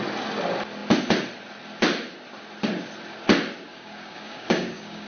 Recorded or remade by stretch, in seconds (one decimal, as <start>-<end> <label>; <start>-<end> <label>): 0.0-3.7 recorded; 3.7-5.1 remade